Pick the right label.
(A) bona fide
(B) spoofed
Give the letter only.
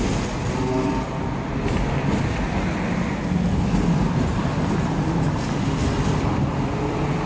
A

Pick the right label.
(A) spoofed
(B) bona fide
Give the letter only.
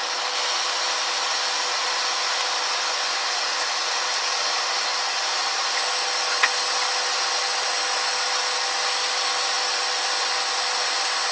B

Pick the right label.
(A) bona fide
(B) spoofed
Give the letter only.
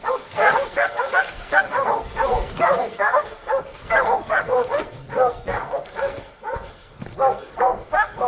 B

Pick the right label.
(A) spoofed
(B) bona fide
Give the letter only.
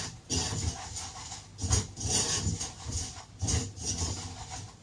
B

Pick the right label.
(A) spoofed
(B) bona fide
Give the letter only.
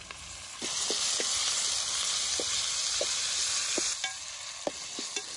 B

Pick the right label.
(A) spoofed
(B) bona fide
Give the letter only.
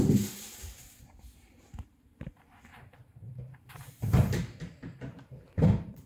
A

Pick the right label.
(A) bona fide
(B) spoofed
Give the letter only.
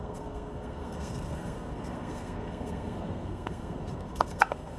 B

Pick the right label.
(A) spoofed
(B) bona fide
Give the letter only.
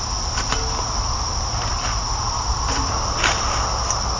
B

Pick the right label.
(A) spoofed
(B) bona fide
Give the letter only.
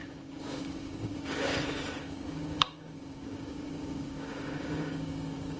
A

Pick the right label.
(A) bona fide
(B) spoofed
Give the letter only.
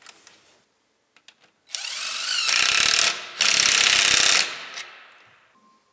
A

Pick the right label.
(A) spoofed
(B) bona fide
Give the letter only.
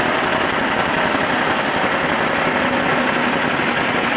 B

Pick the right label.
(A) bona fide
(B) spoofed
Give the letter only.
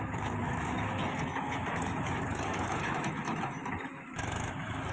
B